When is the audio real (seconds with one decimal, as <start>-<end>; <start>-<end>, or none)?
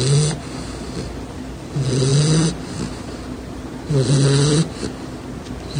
0.0-5.8